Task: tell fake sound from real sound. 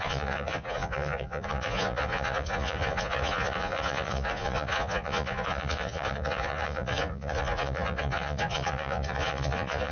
fake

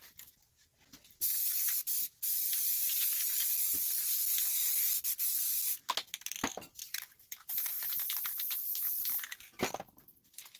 real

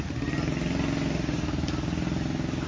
real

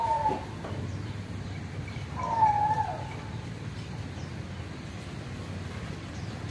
fake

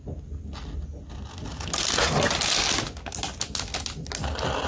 real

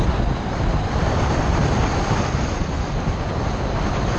real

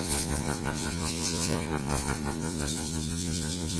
fake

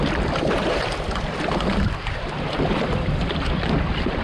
fake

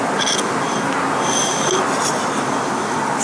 real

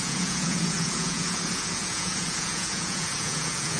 fake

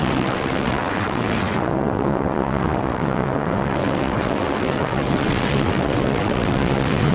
fake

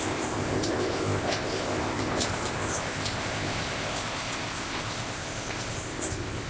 fake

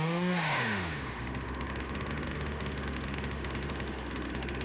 fake